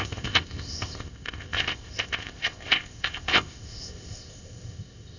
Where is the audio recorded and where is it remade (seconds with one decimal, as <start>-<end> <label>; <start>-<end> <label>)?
0.0-5.2 remade